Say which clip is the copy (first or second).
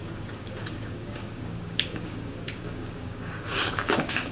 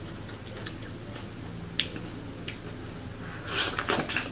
first